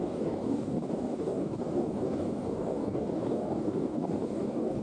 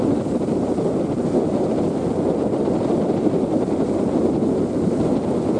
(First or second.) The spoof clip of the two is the first